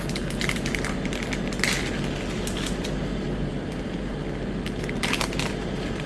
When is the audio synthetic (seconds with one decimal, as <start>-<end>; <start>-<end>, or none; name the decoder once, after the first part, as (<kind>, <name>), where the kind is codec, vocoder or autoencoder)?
none